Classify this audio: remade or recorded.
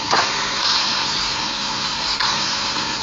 remade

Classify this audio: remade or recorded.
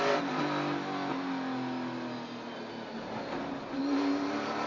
recorded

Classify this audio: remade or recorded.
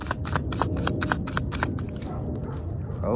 recorded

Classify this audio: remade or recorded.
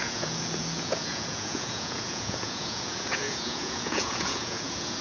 remade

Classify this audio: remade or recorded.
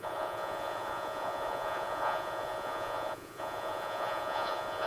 remade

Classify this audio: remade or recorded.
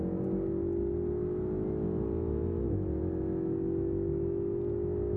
recorded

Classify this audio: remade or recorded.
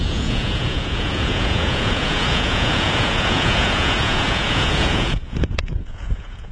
remade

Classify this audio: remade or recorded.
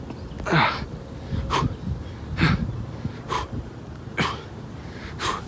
recorded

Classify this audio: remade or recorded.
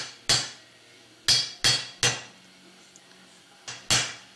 recorded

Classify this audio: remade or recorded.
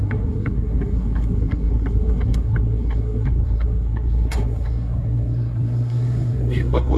remade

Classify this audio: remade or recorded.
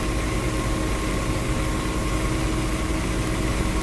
recorded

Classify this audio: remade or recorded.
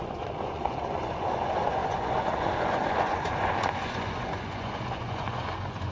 remade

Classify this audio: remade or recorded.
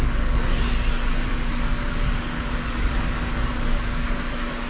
remade